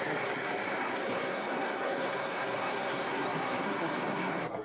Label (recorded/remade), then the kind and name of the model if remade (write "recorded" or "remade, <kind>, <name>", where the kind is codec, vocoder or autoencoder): remade, codec, SNAC